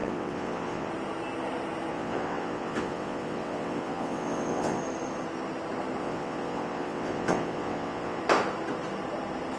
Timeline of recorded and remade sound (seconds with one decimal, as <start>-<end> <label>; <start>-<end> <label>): 0.0-0.9 remade; 0.9-1.9 recorded; 1.9-4.8 remade; 4.8-6.0 recorded; 6.0-8.2 remade; 8.2-9.6 recorded